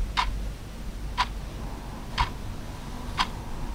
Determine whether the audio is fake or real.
real